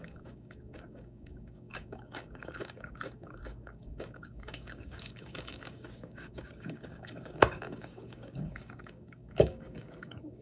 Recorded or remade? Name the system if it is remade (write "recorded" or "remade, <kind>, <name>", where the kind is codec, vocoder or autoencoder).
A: remade, codec, DAC